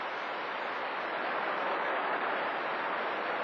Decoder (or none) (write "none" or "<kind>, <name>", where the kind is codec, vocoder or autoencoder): vocoder, BigVGAN v2